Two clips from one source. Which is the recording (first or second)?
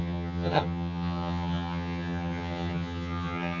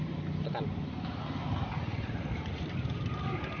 second